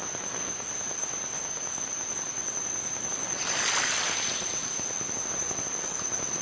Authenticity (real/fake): real